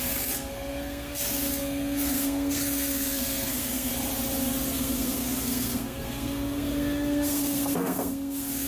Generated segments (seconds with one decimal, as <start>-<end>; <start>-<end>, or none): 0.0-3.9; 4.7-8.7